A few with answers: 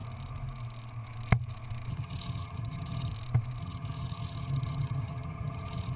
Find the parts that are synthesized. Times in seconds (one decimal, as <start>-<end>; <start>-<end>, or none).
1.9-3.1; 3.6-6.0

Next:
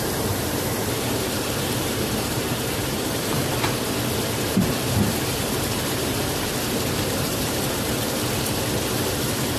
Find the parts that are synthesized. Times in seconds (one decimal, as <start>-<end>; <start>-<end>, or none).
0.0-3.5; 4.2-9.6

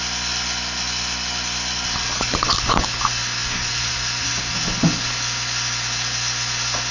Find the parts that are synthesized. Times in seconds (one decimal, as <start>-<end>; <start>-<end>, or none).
none